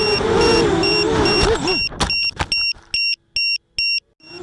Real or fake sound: real